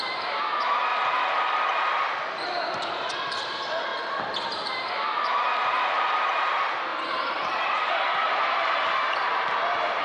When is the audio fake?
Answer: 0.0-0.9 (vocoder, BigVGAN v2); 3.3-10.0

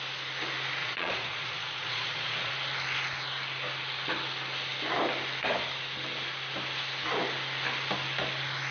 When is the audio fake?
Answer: 0.8-2.5 (vocoder, Vocos)